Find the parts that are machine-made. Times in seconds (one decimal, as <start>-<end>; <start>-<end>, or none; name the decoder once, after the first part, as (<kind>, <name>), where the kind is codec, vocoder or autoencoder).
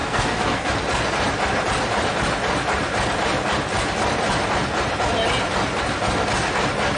0.0-0.7 (codec, SNAC)